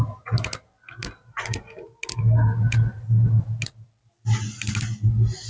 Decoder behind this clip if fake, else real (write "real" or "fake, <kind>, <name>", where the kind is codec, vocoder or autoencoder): real